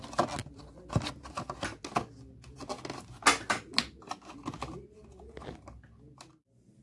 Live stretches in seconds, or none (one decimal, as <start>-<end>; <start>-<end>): 0.0-6.8